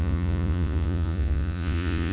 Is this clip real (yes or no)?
no